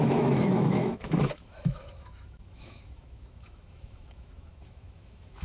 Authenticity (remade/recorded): remade